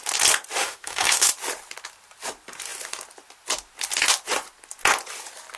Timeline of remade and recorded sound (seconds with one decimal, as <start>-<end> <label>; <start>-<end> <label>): 0.0-0.6 recorded; 0.6-1.3 remade; 1.3-5.6 recorded